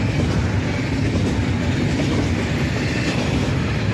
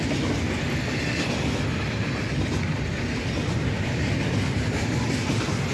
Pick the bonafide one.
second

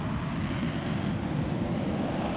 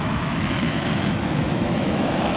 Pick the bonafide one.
first